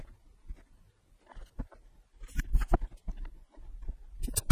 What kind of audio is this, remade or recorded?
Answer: recorded